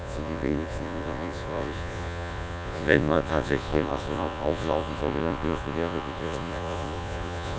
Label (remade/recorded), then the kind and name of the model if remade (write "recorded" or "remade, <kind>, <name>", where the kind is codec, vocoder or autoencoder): remade, vocoder, Vocos